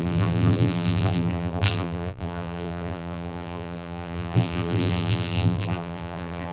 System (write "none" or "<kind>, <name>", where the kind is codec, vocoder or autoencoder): vocoder, BigVGAN v2